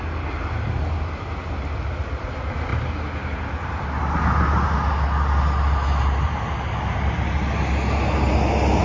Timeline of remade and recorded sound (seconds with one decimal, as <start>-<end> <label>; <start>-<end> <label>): 0.0-8.8 recorded